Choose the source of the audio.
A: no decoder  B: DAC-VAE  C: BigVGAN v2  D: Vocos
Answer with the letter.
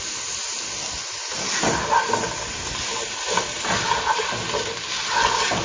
A